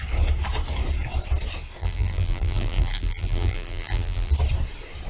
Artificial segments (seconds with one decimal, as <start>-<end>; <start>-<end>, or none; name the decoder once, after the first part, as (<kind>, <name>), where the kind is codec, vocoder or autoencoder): 1.8-4.3 (vocoder, BigVGAN v2)